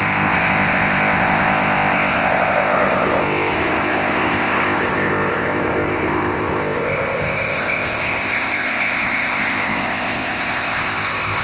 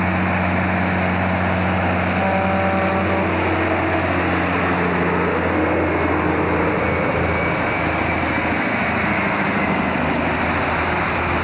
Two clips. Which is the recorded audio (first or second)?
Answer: second